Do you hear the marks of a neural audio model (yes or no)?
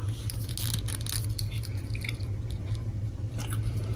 no